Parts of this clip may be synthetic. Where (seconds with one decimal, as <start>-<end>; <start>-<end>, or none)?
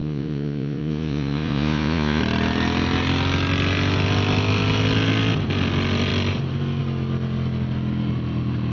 0.0-2.2